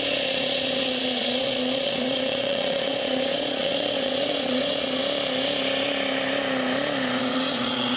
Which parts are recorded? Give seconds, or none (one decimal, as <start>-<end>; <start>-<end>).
5.0-7.2

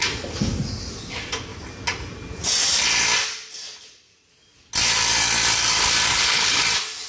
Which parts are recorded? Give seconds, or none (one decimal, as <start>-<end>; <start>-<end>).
0.0-6.1; 6.6-7.1

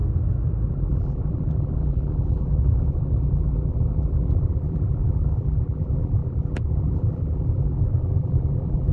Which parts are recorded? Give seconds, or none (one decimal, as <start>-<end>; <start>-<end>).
0.0-0.7

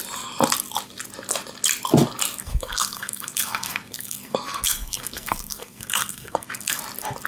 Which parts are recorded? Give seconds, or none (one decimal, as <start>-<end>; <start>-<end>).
0.0-2.4; 6.8-7.3

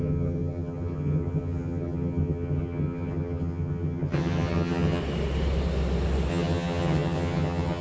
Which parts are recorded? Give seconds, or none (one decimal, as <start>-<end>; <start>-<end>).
5.0-6.3

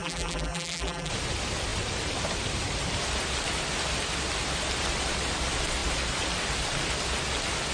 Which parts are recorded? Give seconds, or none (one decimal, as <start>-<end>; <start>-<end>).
1.1-7.7